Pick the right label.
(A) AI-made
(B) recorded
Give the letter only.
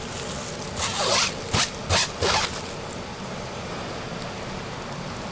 B